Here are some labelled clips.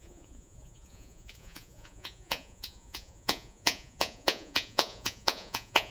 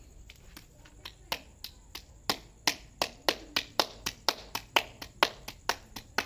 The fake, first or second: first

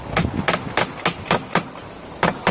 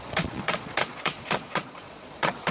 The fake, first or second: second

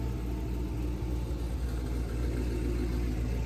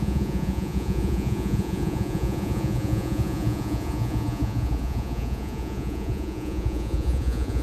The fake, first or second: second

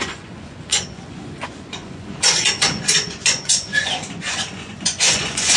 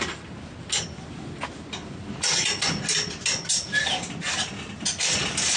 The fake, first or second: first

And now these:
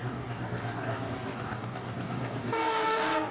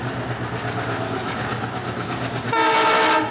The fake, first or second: first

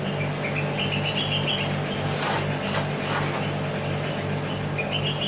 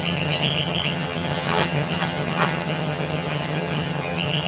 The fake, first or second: second